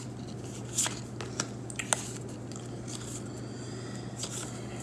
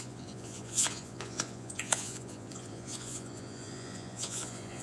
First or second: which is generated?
second